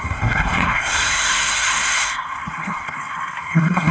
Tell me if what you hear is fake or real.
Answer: fake